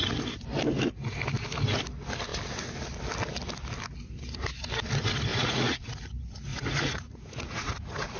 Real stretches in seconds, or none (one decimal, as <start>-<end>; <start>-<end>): 0.0-5.3; 5.9-6.5